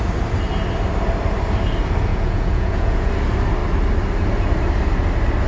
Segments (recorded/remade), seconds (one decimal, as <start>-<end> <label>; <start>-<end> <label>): 0.0-2.1 recorded; 2.1-3.1 remade; 3.1-5.5 recorded